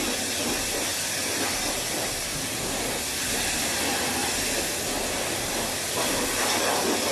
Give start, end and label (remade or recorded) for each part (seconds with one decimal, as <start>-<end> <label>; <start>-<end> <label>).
0.0-7.1 recorded